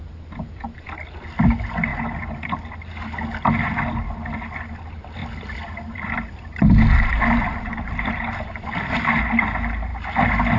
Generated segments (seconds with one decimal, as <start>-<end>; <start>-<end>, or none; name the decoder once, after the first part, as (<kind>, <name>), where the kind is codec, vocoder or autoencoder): 5.2-9.2 (vocoder, BigVGAN v2); 9.9-10.6